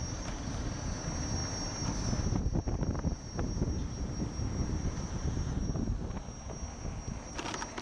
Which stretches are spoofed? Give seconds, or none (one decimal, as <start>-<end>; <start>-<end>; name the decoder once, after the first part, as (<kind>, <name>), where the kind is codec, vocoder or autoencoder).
none

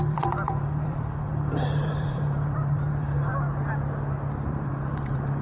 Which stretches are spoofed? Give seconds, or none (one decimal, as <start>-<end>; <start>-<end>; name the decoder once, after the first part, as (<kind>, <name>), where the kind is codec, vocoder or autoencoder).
0.0-3.3 (vocoder, BigVGAN v2); 4.5-5.4